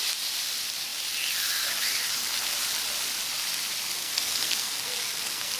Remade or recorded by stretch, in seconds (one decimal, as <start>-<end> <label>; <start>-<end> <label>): 0.0-4.0 recorded; 4.0-5.6 remade